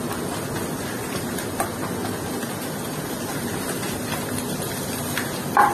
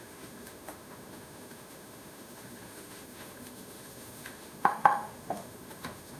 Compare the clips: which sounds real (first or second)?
first